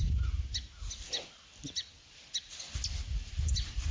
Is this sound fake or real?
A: real